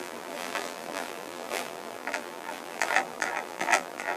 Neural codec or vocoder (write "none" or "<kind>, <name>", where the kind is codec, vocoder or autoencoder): vocoder, BigVGAN v2